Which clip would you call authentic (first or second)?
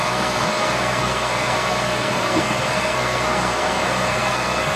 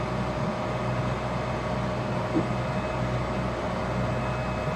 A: second